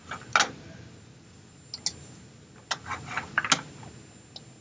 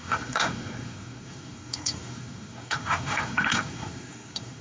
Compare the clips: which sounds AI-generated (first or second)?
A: second